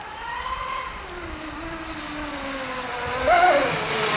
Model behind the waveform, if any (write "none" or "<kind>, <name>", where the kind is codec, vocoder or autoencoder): none